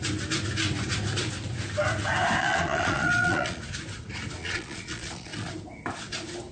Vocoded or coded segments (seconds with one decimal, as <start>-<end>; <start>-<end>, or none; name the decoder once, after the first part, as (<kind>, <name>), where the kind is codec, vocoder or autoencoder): 2.4-3.6 (vocoder, Vocos); 4.4-5.5